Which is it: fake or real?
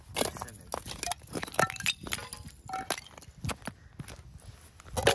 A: real